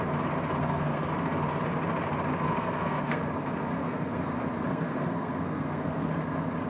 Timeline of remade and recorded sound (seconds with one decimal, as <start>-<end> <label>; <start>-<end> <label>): 0.0-0.6 recorded; 0.6-1.1 remade; 1.1-2.3 recorded; 2.3-3.2 remade; 3.2-3.8 recorded; 3.8-4.3 remade; 4.3-4.7 recorded; 4.7-6.1 remade; 6.1-6.7 recorded